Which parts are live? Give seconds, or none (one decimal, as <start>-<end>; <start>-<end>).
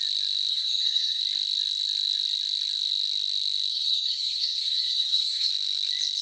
0.0-0.5; 1.2-3.7; 5.5-6.2